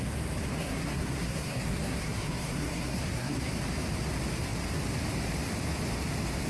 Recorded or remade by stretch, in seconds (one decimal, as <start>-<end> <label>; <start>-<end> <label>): 0.0-0.5 recorded; 0.5-3.5 remade; 3.5-6.5 recorded